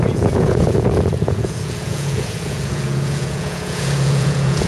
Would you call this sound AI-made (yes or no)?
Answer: yes